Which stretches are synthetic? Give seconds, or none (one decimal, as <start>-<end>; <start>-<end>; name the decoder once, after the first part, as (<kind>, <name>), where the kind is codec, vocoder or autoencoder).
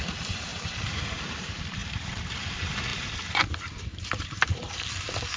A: 0.0-5.4 (vocoder, BigVGAN v2)